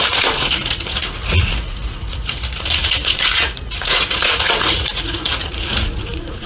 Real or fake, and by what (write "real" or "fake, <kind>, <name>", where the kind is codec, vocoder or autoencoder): fake, vocoder, Vocos